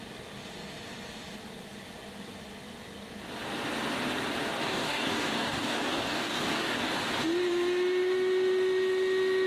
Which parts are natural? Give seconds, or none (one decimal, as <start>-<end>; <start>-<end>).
0.0-4.5; 7.0-9.5